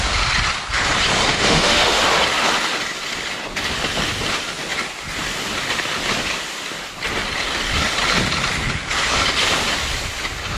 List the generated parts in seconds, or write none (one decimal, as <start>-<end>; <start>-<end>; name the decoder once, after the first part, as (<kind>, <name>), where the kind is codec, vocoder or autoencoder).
1.3-2.0 (autoencoder, DAC-VAE)